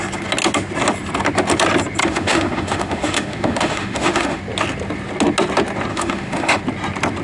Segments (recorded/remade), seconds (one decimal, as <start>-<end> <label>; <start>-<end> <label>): 0.0-2.0 recorded; 2.0-4.4 remade; 4.4-5.9 recorded; 5.9-6.6 remade; 6.6-7.2 recorded